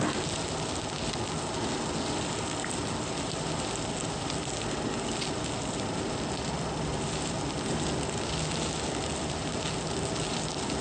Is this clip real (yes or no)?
yes